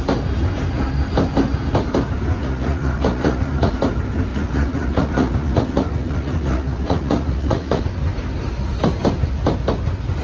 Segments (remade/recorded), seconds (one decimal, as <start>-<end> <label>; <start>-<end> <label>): 0.0-2.4 recorded; 2.4-3.7 remade; 3.7-4.3 recorded; 4.3-7.8 remade; 7.8-10.2 recorded